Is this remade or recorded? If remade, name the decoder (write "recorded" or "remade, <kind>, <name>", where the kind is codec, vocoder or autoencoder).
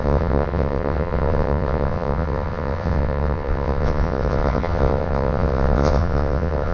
remade, vocoder, WaveNeXt